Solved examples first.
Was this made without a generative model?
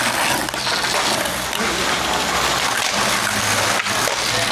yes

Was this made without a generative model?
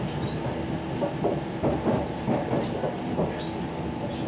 yes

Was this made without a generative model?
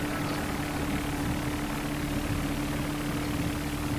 yes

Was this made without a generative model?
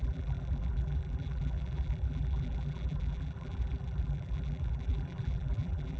no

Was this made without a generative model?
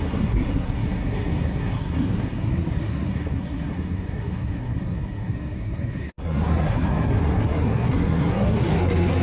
no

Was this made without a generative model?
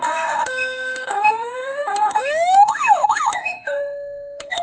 no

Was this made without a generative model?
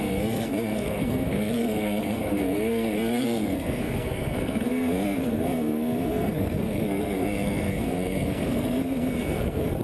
no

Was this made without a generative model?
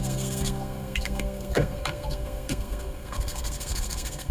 no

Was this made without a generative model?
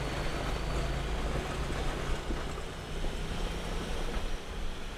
yes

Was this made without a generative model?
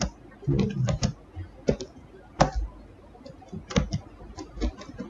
yes